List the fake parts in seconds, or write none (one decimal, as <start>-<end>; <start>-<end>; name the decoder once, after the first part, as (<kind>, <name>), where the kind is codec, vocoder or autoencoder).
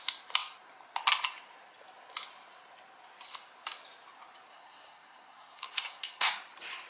4.5-6.3 (codec, SNAC)